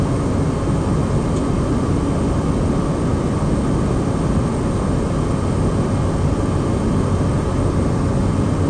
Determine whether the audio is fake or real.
real